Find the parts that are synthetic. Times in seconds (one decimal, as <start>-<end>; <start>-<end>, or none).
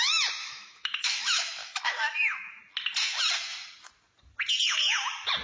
0.4-2.6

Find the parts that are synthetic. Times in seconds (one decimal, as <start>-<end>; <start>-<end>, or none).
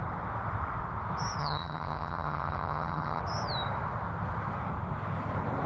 1.4-3.2